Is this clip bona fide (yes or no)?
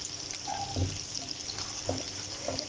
yes